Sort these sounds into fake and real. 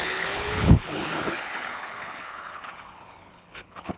fake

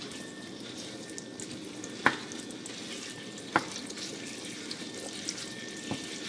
real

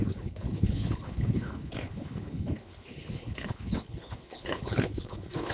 fake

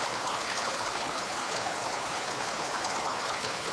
fake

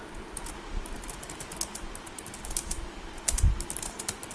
real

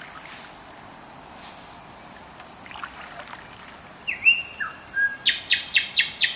real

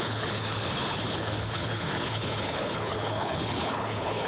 fake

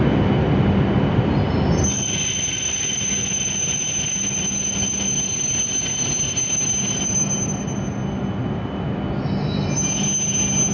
real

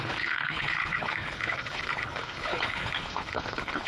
fake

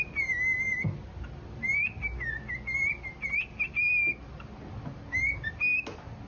real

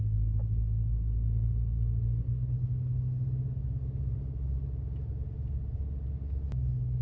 real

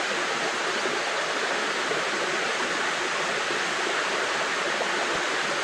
real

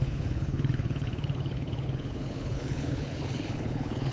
fake